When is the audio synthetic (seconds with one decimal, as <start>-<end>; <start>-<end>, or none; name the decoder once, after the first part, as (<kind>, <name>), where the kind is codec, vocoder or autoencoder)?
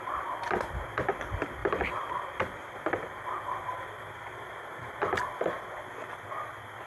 1.6-5.2 (vocoder, BigVGAN v2)